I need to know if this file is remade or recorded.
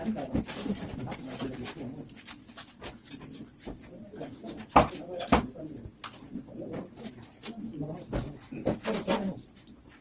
recorded